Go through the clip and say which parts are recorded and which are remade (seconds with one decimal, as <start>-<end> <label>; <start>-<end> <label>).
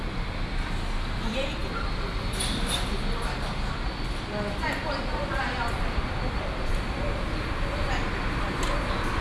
0.0-9.2 recorded